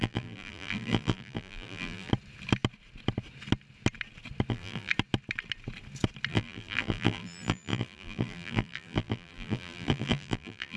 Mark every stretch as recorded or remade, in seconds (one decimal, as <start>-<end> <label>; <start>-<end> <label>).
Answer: 0.0-2.1 remade; 2.1-4.5 recorded; 4.5-4.9 remade; 4.9-6.3 recorded; 6.3-10.8 remade